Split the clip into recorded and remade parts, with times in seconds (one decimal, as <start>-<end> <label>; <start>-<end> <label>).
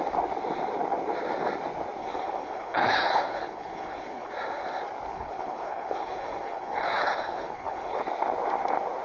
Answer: 0.0-2.0 recorded; 2.0-4.3 remade; 4.3-5.1 recorded; 5.1-8.0 remade; 8.0-9.0 recorded